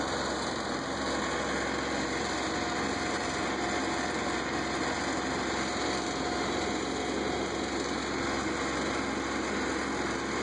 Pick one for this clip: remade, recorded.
recorded